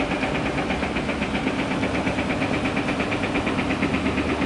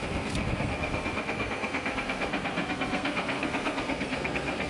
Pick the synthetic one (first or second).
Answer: second